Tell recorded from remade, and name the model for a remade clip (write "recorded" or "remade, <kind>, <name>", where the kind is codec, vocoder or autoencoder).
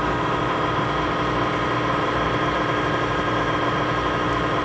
remade, vocoder, BigVGAN v2